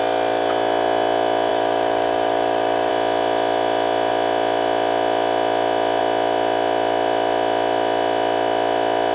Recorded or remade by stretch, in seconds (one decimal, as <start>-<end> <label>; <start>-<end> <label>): 0.0-1.5 recorded; 1.5-2.9 remade; 2.9-9.1 recorded